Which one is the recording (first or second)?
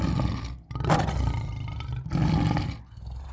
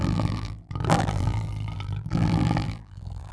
first